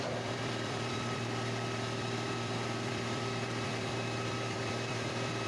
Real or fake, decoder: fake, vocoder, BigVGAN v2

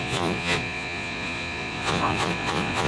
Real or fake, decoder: fake, vocoder, Vocos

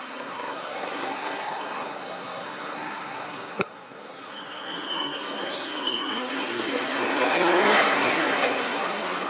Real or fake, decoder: fake, codec, SNAC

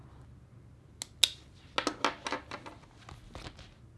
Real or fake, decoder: real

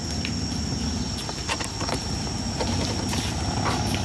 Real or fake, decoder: real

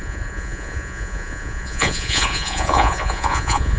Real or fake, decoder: fake, vocoder, Vocos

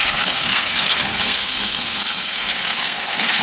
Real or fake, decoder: fake, codec, SNAC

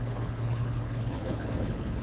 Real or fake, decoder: fake, codec, HILCodec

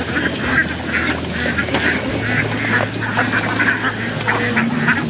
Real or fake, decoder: real